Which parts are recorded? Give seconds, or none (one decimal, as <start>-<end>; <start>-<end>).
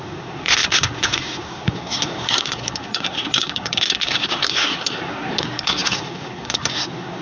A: none